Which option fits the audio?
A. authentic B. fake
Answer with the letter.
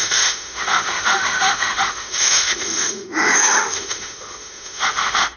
B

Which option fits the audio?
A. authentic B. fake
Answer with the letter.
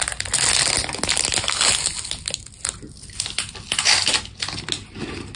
A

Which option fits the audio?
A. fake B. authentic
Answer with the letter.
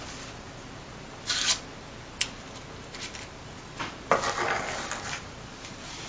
B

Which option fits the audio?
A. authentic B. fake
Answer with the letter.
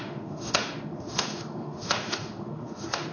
B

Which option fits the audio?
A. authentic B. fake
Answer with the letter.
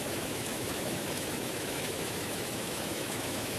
B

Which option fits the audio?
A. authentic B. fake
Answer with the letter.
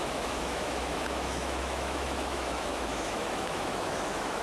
B